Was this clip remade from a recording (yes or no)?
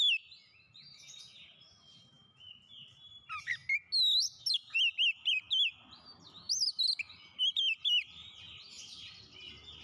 no